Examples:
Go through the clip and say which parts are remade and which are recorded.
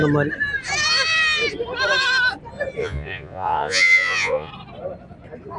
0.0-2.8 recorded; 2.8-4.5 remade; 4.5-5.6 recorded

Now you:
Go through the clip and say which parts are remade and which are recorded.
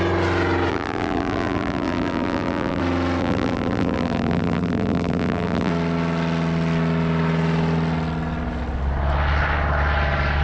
0.0-0.7 recorded; 0.7-2.8 remade; 2.8-3.2 recorded; 3.2-5.7 remade; 5.7-10.4 recorded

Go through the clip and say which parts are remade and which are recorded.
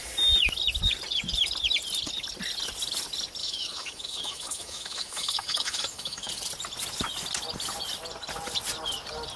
0.0-3.4 recorded; 3.4-6.3 remade; 6.3-9.4 recorded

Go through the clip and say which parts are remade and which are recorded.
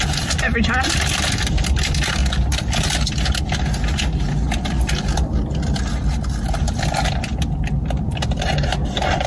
0.0-2.2 remade; 2.2-6.8 recorded; 6.8-7.3 remade; 7.3-8.0 recorded; 8.0-9.3 remade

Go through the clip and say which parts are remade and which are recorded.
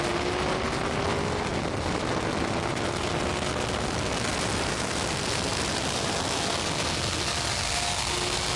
0.0-8.6 recorded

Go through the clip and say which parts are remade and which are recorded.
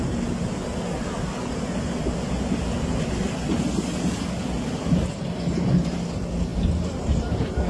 0.0-7.7 recorded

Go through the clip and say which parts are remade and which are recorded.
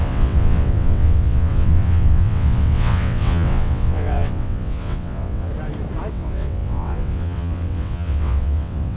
0.0-5.5 remade; 5.5-6.1 recorded; 6.1-9.0 remade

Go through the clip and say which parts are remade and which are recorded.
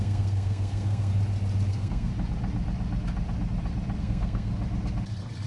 0.0-1.1 remade; 1.1-1.7 recorded; 1.7-2.1 remade; 2.1-4.0 recorded; 4.0-4.5 remade; 4.5-5.5 recorded